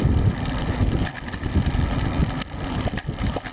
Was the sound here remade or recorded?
recorded